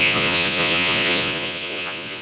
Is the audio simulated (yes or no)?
yes